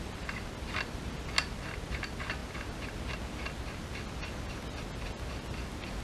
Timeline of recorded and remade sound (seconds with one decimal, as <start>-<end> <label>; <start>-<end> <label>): 0.0-6.0 recorded